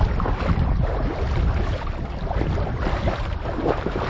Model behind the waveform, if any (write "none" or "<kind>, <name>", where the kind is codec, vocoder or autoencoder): none